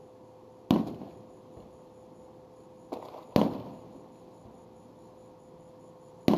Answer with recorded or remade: recorded